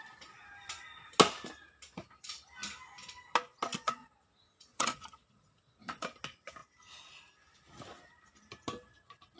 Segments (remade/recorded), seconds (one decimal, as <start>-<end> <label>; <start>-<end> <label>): 0.0-4.0 recorded; 4.0-6.0 remade; 6.0-9.4 recorded